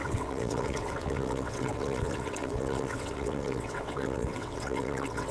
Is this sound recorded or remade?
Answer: remade